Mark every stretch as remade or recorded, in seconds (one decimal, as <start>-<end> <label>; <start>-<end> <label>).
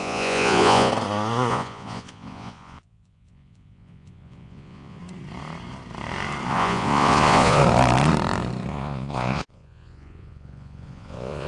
0.0-0.9 remade; 0.9-1.5 recorded; 1.5-5.0 remade; 5.0-6.5 recorded; 6.5-7.6 remade; 7.6-8.7 recorded; 8.7-11.5 remade